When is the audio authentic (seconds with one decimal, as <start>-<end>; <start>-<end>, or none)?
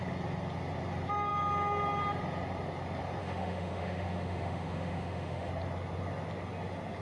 0.0-3.2; 5.5-7.0